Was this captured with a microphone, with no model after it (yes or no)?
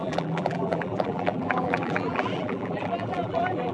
no